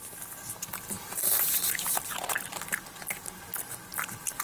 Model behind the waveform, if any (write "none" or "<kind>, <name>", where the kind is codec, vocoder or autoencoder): none